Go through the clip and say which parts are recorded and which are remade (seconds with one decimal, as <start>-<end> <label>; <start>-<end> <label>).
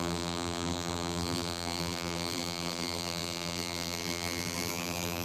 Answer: 0.0-5.2 remade